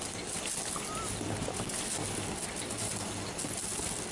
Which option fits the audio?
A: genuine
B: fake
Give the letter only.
A